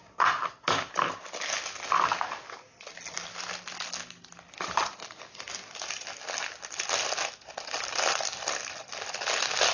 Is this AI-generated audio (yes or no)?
no